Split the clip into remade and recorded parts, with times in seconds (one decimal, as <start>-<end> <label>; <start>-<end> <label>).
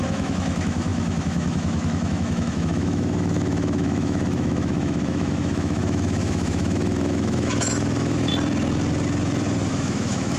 0.0-8.3 remade; 8.3-9.7 recorded; 9.7-10.4 remade